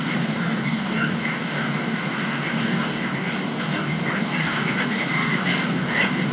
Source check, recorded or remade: remade